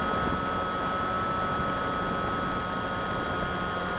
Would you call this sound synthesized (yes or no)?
no